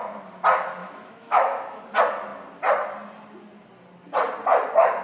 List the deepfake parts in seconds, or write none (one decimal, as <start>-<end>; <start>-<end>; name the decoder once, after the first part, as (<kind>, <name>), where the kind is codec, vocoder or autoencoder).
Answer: 0.8-1.8 (autoencoder, DAC-VAE)